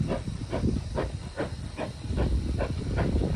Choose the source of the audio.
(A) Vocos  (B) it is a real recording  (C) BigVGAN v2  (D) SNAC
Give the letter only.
C